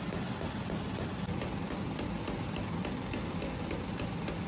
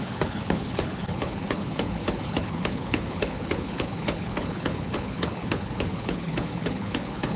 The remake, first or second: second